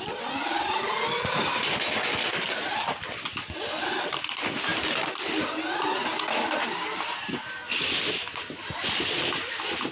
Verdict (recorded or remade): recorded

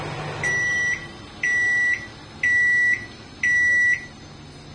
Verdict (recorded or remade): recorded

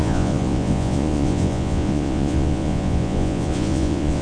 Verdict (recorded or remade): remade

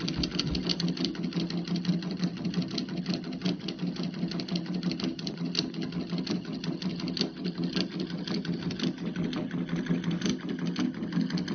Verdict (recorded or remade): recorded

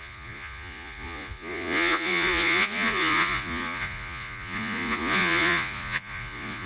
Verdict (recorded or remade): remade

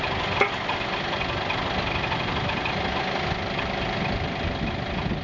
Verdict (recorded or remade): recorded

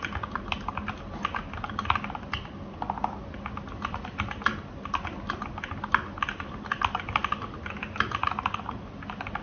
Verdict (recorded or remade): recorded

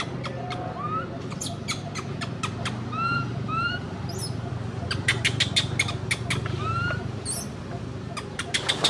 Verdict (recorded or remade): recorded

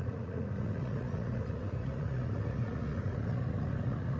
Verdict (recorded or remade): remade